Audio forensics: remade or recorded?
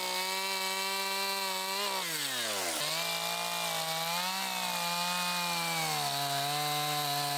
recorded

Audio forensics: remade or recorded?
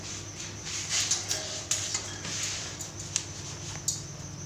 recorded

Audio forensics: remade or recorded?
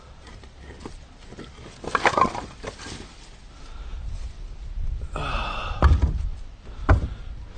recorded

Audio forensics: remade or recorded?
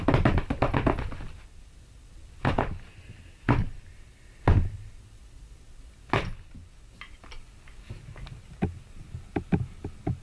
recorded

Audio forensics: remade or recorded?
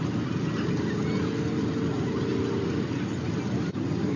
recorded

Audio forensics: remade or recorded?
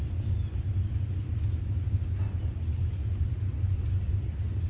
recorded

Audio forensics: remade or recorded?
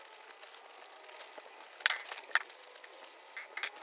recorded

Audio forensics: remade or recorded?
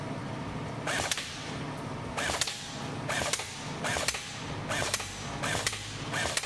recorded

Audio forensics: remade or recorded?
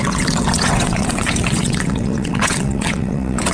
remade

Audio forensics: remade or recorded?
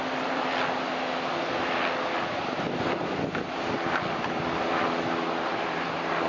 recorded